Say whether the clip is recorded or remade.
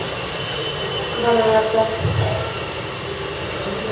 recorded